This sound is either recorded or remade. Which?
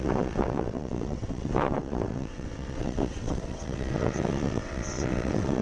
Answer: remade